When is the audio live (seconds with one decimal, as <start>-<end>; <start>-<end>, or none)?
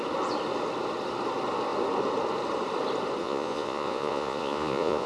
0.0-3.2